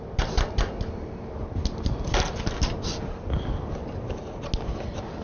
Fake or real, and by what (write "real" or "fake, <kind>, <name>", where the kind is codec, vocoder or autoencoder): real